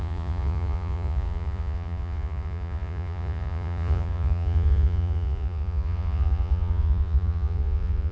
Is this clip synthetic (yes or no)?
yes